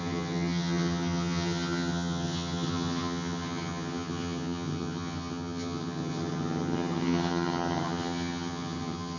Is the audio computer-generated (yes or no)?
yes